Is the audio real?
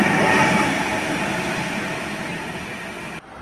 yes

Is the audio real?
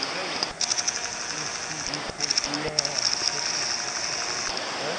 yes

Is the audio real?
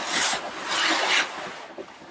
yes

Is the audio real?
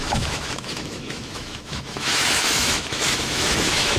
no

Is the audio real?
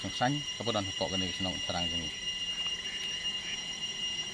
yes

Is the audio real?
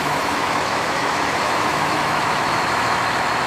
no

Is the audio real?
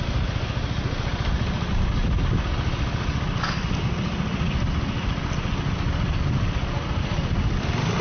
yes